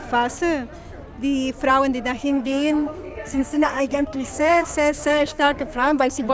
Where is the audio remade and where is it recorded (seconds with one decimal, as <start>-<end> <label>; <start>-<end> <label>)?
0.0-2.2 recorded; 2.2-6.3 remade